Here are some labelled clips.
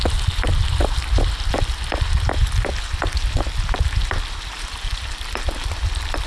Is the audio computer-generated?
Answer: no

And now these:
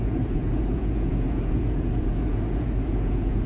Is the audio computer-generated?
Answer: yes